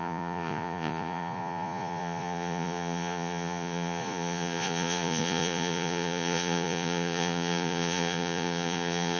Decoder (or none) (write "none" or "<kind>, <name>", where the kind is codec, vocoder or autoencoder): vocoder, Vocos